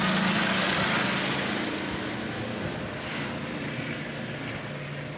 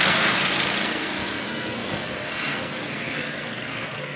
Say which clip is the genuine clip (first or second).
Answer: first